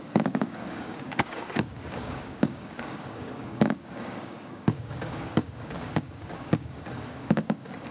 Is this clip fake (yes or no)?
yes